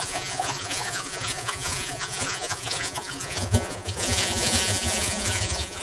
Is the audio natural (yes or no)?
no